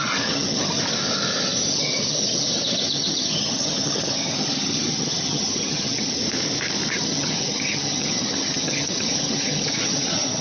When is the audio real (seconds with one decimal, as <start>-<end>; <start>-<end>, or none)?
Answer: 0.8-1.7; 6.2-6.9

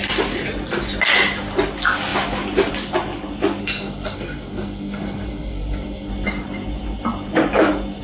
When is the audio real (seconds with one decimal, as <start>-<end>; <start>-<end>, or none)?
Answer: 0.0-3.6; 6.1-8.0